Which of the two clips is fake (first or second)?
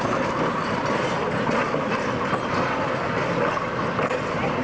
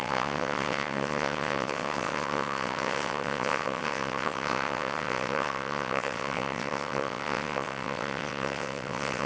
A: second